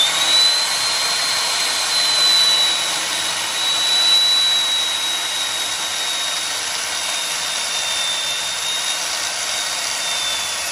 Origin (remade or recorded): recorded